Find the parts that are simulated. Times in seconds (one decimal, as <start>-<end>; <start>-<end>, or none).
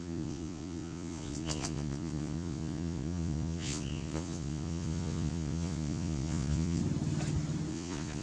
0.0-6.8; 7.7-8.2